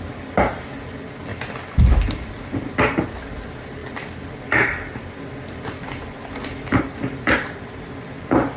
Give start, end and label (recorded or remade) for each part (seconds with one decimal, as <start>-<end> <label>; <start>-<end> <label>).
0.0-8.6 recorded